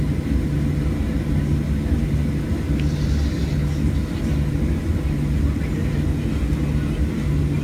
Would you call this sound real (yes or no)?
yes